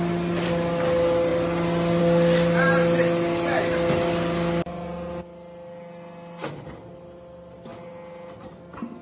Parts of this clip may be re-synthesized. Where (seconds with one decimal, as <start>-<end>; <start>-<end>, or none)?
none